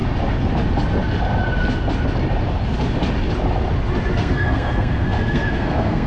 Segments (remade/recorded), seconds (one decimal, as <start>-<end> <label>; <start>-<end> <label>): 0.0-4.2 recorded; 4.2-6.1 remade